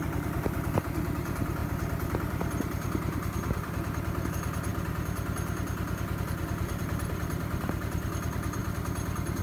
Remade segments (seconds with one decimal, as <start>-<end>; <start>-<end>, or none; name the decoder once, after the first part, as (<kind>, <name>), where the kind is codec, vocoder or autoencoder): 0.0-4.7 (vocoder, BigVGAN v2); 6.2-8.6